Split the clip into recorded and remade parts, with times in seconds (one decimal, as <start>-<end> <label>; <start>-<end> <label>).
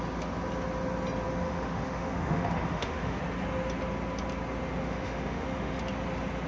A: 0.0-1.4 recorded; 1.4-3.2 remade; 3.2-4.8 recorded; 4.8-5.8 remade; 5.8-6.5 recorded